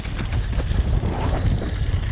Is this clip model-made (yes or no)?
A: no